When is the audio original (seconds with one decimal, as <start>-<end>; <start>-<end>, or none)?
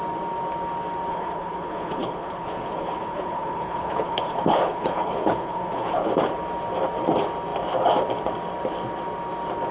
0.0-1.1; 6.1-9.7